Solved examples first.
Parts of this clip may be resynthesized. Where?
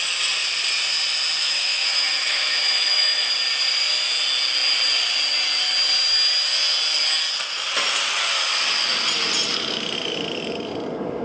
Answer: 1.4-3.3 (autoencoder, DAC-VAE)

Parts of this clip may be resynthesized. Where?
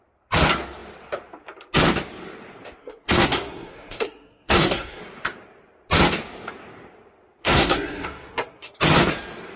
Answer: 2.8-5.0 (codec, SNAC); 7.4-8.8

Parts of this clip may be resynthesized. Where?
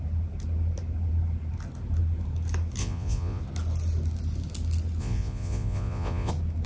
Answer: 2.8-3.4 (vocoder, Vocos); 5.0-6.3